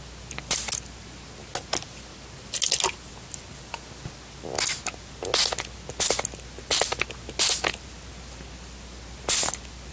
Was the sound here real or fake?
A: real